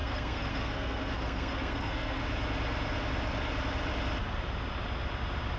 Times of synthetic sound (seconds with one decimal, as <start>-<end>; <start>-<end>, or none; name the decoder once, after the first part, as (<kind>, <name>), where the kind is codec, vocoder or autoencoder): 0.0-2.2 (codec, SNAC)

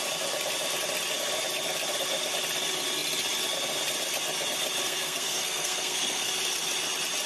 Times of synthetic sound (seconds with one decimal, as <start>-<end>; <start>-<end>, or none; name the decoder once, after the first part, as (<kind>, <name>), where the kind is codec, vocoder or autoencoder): 4.8-6.3 (codec, SNAC)

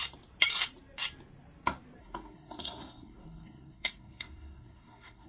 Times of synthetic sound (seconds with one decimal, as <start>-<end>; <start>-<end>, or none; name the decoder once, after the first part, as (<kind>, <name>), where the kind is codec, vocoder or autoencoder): 2.0-5.3 (codec, SNAC)

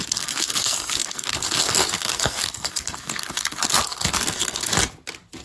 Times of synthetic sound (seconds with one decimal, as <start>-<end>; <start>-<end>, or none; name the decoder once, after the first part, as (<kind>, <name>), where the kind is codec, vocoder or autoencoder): 0.0-4.7 (codec, SNAC)

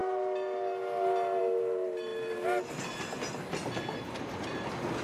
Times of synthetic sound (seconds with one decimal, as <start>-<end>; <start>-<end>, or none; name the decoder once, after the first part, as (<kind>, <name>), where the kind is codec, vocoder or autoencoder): none

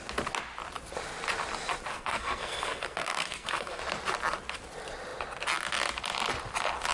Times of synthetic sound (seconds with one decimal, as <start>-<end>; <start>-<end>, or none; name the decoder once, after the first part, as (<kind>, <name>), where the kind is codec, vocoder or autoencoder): 1.9-3.8 (codec, SNAC)

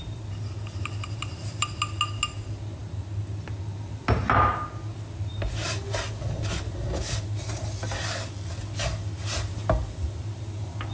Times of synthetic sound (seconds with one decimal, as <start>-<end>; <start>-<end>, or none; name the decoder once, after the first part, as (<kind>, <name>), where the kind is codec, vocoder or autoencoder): none

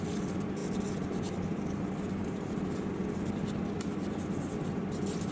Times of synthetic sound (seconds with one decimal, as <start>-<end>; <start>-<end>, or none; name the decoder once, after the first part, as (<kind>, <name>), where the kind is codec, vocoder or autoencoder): none